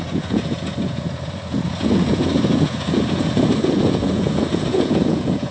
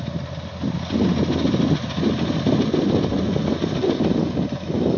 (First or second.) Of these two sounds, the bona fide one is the second